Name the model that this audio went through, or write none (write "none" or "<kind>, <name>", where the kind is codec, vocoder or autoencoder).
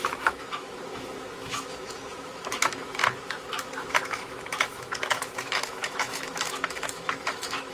autoencoder, DAC-VAE